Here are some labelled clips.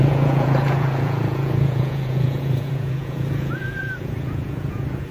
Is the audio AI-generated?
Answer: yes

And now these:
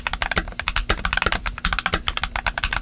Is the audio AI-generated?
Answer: no